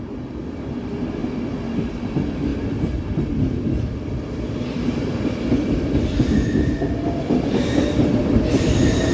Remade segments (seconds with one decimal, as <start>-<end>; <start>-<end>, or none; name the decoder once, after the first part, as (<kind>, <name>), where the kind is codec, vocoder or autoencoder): 0.0-1.2 (vocoder, BigVGAN v2); 1.9-9.1